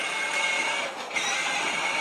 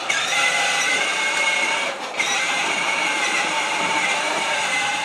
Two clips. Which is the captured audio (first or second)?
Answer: first